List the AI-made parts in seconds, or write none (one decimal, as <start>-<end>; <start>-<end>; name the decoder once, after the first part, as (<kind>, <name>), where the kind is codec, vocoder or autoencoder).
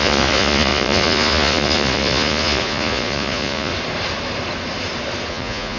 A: 0.0-3.7 (vocoder, Vocos); 5.3-5.8